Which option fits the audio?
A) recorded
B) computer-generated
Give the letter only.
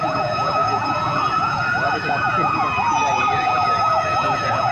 B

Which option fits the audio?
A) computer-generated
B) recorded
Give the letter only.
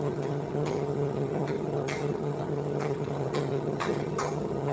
A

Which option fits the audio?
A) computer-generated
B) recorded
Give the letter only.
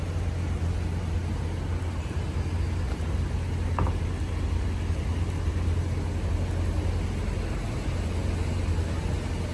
B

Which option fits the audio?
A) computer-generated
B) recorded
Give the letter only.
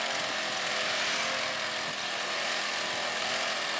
B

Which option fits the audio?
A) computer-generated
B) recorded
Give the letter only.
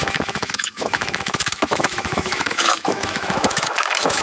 A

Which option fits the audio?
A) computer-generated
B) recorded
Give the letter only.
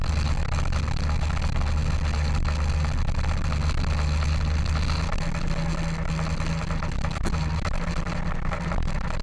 B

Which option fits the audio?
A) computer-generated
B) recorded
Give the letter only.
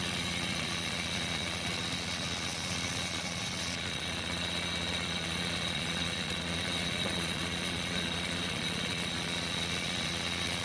A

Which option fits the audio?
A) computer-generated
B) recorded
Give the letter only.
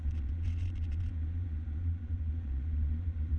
A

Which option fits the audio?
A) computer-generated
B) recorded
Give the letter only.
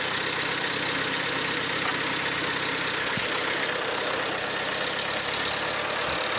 B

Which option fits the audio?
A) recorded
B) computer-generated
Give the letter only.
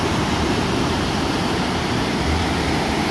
B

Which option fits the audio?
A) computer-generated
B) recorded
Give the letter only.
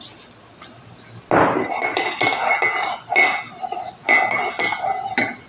B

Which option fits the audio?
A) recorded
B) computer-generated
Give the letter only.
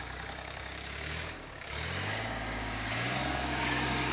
B